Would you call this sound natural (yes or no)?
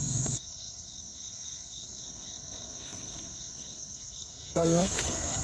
no